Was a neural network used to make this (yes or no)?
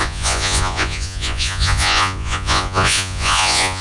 yes